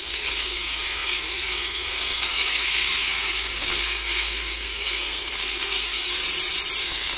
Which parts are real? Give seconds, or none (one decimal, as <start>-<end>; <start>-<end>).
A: 6.2-6.8